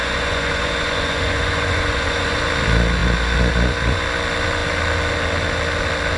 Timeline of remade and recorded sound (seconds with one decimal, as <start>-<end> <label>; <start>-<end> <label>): 0.0-2.4 remade; 2.4-6.2 recorded